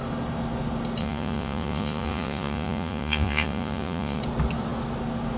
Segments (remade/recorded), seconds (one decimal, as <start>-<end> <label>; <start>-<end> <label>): 0.0-1.0 recorded; 1.0-4.2 remade; 4.2-5.4 recorded